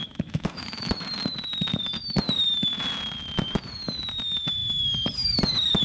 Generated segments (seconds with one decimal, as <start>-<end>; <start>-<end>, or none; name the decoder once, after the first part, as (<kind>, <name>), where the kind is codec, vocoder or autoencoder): 0.0-0.9 (autoencoder, DAC-VAE)